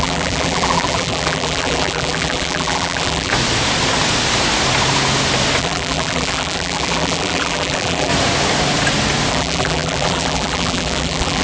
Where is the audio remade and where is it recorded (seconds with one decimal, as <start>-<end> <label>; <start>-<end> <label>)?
0.0-3.3 remade; 3.3-5.6 recorded; 5.6-8.1 remade; 8.1-9.3 recorded; 9.3-11.4 remade